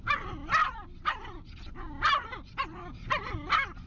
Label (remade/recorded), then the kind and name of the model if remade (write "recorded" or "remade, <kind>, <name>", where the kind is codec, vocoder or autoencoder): recorded